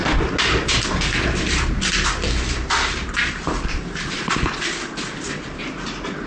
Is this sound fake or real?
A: real